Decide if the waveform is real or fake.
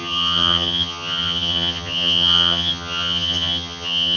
fake